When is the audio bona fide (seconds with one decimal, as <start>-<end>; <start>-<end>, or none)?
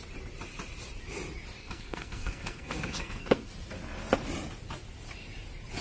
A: 0.0-1.6; 3.5-5.8